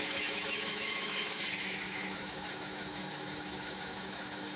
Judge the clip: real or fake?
fake